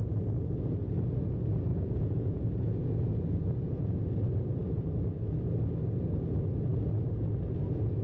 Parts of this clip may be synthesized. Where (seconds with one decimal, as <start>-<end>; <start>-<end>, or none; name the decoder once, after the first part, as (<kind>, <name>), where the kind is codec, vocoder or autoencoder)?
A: 1.7-4.0 (vocoder, Vocos)